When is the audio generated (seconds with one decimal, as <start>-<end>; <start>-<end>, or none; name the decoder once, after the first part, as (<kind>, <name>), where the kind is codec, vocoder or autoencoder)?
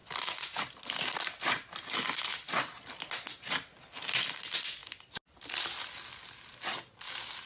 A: none